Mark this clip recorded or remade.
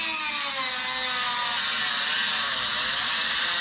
recorded